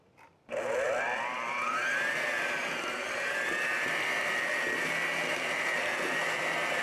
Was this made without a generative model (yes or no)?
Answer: no